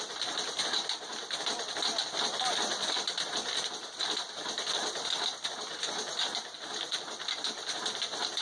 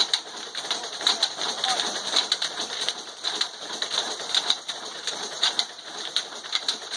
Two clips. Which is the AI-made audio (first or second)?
second